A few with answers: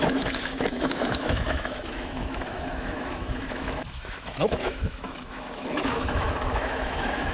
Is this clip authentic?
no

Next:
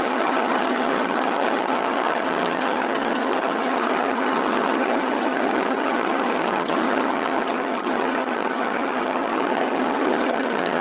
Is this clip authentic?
no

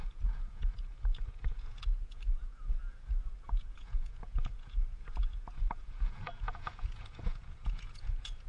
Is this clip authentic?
no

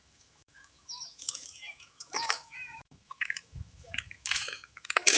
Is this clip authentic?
no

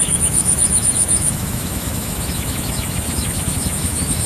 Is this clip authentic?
no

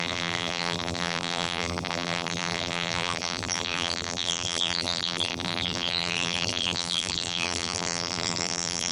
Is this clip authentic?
no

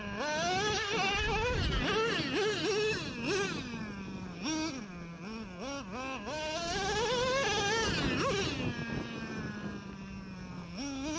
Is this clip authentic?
yes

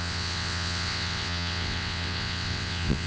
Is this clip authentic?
no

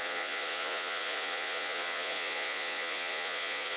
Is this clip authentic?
no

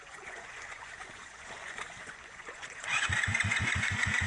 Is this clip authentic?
no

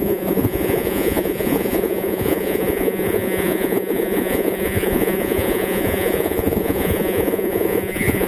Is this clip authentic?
no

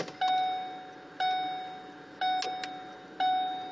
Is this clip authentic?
yes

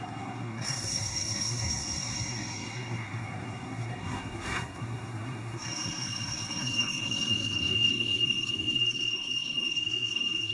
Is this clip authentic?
no